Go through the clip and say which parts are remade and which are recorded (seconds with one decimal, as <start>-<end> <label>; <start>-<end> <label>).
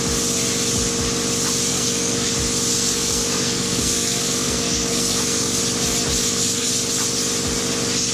0.0-1.7 recorded; 1.7-2.3 remade; 2.3-2.7 recorded; 2.7-5.6 remade; 5.6-6.2 recorded; 6.2-6.7 remade; 6.7-8.1 recorded